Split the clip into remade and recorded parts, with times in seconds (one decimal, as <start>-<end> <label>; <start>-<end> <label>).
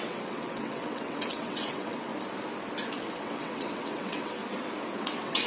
0.0-2.1 remade; 2.1-3.1 recorded; 3.1-4.4 remade; 4.4-5.0 recorded; 5.0-5.5 remade